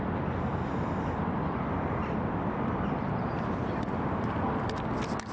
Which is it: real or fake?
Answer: real